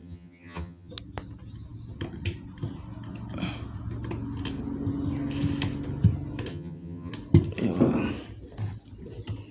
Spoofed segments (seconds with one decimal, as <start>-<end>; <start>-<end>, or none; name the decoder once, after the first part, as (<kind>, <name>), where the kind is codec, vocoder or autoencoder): 0.0-0.9 (vocoder, HiFi-GAN); 6.5-7.1